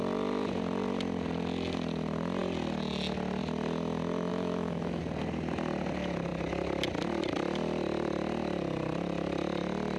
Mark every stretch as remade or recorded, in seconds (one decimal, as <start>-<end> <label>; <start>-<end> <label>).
0.0-4.3 recorded; 4.3-5.0 remade; 5.0-10.0 recorded